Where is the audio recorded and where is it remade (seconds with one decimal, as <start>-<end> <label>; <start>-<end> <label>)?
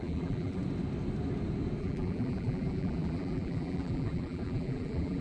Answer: 0.0-0.6 remade; 0.6-1.8 recorded; 1.8-5.2 remade